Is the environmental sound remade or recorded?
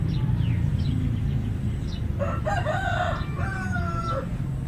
recorded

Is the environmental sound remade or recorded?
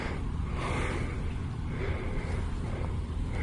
recorded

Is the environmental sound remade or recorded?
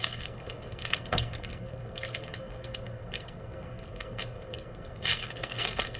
remade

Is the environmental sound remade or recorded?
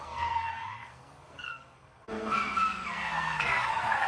remade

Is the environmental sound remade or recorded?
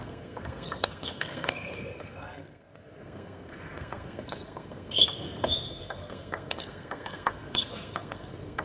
remade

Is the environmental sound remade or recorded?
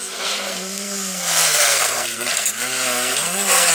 remade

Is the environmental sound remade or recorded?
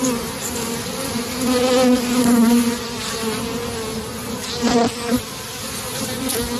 recorded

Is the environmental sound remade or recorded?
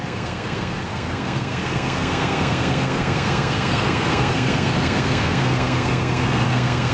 remade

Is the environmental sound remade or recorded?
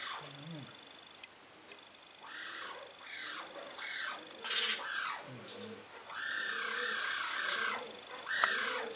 recorded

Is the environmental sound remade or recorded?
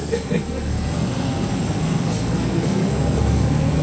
remade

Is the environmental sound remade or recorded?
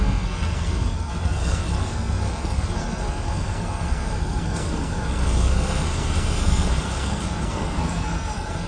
remade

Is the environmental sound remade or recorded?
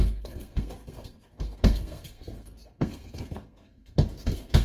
remade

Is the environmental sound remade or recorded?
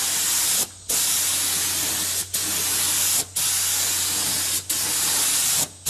recorded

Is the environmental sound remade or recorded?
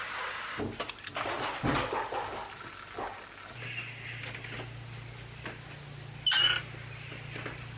recorded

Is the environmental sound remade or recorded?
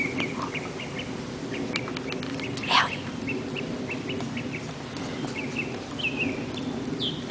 recorded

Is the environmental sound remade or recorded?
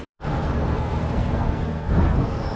remade